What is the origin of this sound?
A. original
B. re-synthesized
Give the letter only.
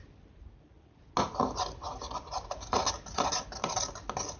A